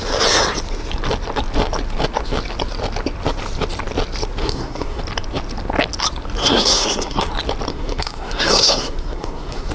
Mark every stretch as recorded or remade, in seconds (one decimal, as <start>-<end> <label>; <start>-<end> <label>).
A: 0.0-4.4 recorded; 4.4-5.0 remade; 5.0-6.4 recorded; 6.4-7.3 remade; 7.3-7.7 recorded; 7.7-9.7 remade